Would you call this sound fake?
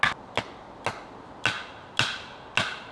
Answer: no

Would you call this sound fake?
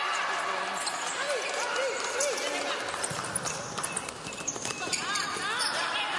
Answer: no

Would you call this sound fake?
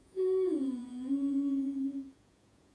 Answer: yes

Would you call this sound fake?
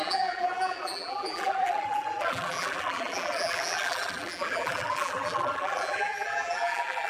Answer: yes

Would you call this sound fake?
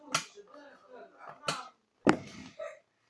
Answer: no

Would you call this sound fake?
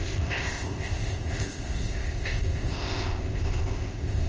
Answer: yes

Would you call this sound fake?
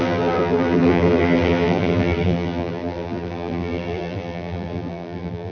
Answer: yes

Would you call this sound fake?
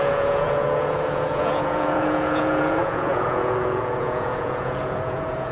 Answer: yes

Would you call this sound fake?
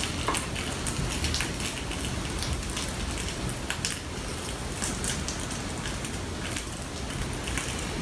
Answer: no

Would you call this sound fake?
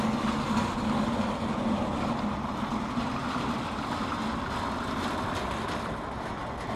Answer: no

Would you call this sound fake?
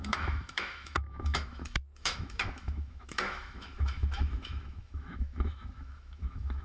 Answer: yes